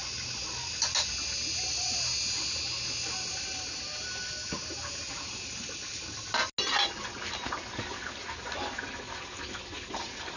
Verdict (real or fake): real